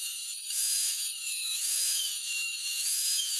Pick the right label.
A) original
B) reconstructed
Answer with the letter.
B